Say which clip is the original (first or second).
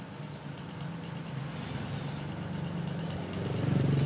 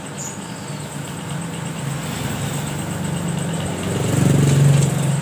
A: second